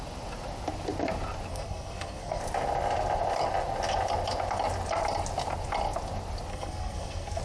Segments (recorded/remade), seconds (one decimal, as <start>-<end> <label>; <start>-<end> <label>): 0.0-1.5 recorded; 1.5-2.4 remade; 2.4-6.5 recorded; 6.5-7.4 remade